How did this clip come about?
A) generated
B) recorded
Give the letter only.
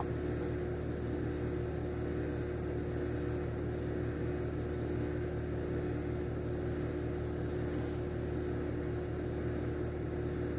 B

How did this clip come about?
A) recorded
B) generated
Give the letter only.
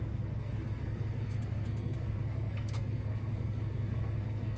B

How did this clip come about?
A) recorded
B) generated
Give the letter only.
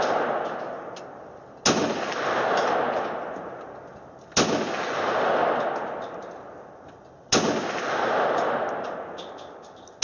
A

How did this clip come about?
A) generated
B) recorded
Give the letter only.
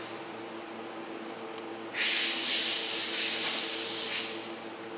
B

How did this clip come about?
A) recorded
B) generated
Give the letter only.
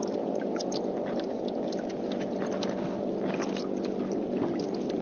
A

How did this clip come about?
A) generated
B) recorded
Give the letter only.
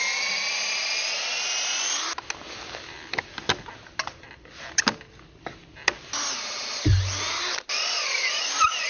B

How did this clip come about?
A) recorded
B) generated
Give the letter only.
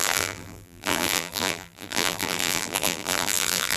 B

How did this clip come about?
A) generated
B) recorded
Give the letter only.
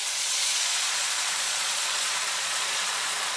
A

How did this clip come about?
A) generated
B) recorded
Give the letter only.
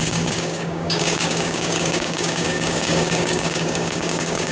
A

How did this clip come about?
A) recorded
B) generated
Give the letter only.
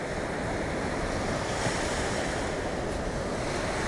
A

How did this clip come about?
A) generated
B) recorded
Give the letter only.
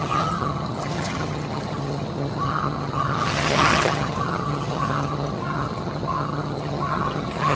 A